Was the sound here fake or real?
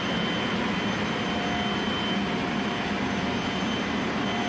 real